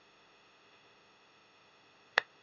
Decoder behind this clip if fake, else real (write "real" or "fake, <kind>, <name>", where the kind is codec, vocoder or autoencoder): fake, autoencoder, DAC-VAE